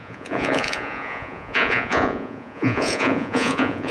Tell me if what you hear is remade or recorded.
remade